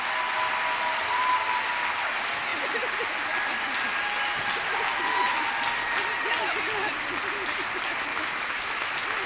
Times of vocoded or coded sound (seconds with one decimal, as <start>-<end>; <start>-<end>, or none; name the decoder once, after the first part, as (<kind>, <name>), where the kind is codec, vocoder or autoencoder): 8.1-8.9 (autoencoder, DAC-VAE)